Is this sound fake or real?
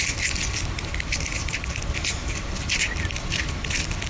real